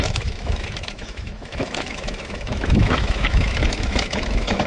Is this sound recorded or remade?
remade